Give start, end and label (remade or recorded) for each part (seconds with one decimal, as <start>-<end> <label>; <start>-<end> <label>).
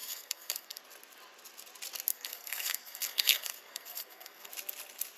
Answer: 0.0-0.8 remade; 0.8-2.1 recorded; 2.1-4.5 remade; 4.5-5.2 recorded